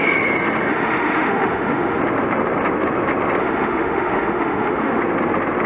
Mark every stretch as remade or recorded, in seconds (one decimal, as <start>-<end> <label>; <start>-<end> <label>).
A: 0.0-0.7 recorded; 0.7-2.0 remade; 2.0-3.4 recorded; 3.4-5.0 remade; 5.0-5.7 recorded